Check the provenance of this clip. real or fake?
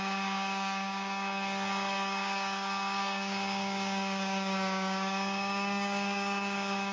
fake